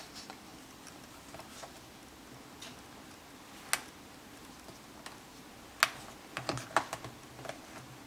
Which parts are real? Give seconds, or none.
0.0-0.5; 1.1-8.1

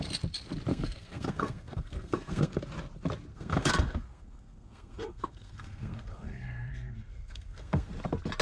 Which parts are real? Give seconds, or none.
0.0-0.7; 2.6-3.3; 7.9-8.4

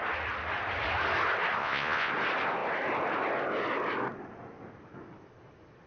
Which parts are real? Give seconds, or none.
0.0-1.6; 2.1-5.9

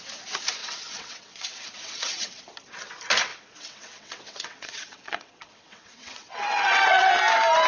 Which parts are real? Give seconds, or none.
0.0-0.6; 2.4-3.3; 7.1-7.7

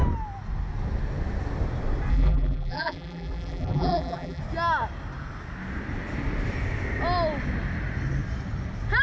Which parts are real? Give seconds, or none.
0.0-2.1; 4.4-9.0